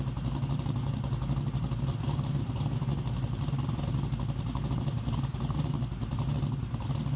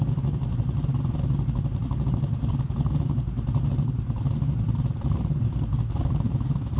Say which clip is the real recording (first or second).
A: first